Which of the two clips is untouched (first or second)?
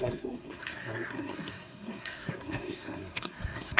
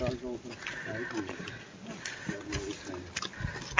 second